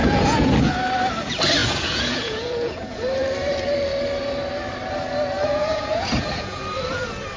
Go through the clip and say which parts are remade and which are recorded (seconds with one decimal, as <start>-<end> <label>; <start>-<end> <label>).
0.0-0.7 remade; 0.7-1.6 recorded; 1.6-3.0 remade; 3.0-5.4 recorded; 5.4-6.6 remade; 6.6-7.4 recorded